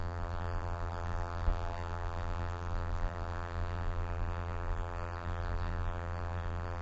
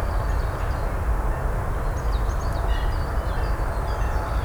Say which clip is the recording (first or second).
second